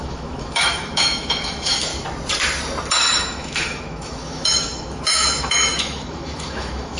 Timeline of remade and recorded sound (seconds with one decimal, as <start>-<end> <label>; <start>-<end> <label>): 0.0-1.9 remade; 1.9-3.2 recorded; 3.2-7.0 remade